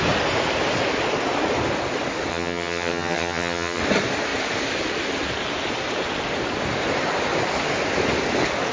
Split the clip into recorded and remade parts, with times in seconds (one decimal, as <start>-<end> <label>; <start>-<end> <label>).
0.0-2.3 recorded; 2.3-3.8 remade; 3.8-8.7 recorded